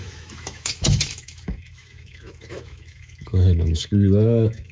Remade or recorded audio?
remade